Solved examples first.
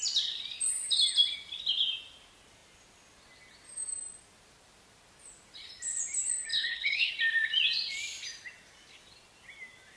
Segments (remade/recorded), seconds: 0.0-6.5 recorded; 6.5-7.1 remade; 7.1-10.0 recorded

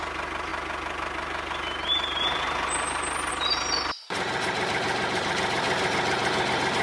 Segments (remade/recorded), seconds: 0.0-6.8 recorded

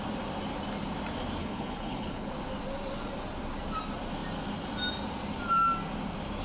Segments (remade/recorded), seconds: 0.0-1.4 recorded; 1.4-2.3 remade; 2.3-6.4 recorded

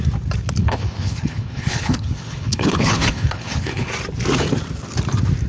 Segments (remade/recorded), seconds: 0.0-0.6 recorded; 0.6-3.9 remade; 3.9-5.5 recorded

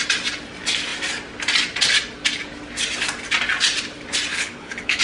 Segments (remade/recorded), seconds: 0.0-4.3 recorded; 4.3-5.0 remade

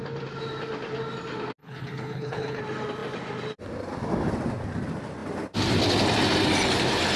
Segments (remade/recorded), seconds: 0.0-1.6 recorded; 1.6-2.6 remade; 2.6-7.2 recorded

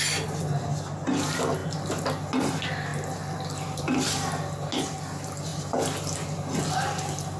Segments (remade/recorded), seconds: 0.0-7.4 recorded

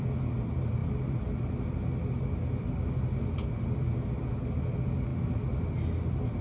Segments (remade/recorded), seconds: 0.0-6.4 recorded